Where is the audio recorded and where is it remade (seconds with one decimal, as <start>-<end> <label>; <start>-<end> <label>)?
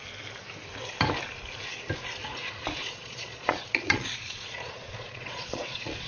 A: 0.0-2.2 recorded; 2.2-6.1 remade